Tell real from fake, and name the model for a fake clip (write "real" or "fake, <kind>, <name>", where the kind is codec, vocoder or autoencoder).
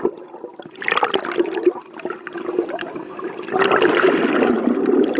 real